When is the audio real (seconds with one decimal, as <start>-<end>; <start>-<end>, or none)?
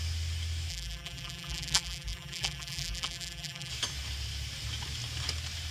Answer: 0.0-0.7; 3.7-5.7